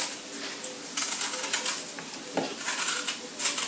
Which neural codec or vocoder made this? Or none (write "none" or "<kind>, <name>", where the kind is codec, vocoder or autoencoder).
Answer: none